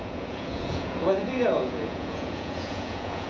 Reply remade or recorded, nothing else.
remade